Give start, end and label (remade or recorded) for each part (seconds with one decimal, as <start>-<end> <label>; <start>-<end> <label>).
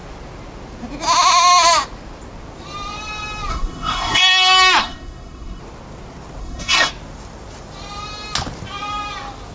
0.0-3.5 recorded; 3.5-4.2 remade; 4.2-4.8 recorded; 4.8-5.6 remade; 5.6-6.4 recorded; 6.4-6.9 remade; 6.9-9.5 recorded